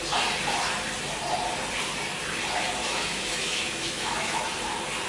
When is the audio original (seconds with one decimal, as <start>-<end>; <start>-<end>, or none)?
0.0-2.8; 4.4-5.1